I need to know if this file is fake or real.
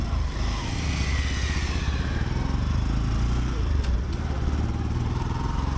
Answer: real